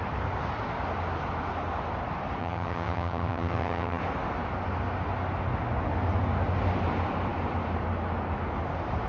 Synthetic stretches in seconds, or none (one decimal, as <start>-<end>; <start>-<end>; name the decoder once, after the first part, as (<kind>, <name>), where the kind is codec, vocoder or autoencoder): 2.4-4.0 (vocoder, HiFi-GAN)